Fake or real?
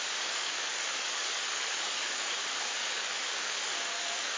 fake